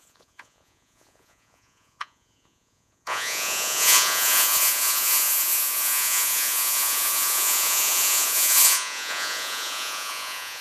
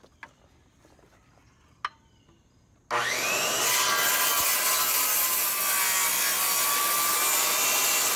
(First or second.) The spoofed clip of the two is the first